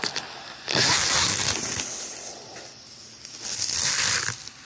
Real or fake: real